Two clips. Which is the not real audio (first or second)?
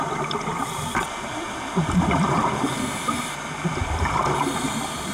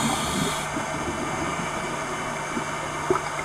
first